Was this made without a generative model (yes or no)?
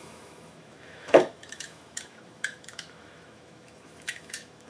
no